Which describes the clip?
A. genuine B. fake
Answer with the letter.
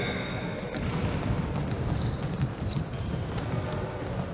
A